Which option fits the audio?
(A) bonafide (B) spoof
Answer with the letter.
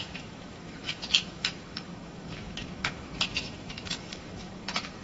B